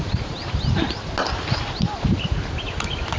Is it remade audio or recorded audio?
recorded